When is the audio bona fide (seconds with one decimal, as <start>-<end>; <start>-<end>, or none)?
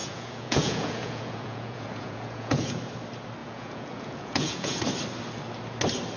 2.8-3.4; 4.8-6.2